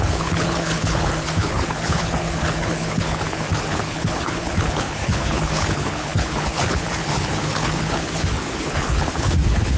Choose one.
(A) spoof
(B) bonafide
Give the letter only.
A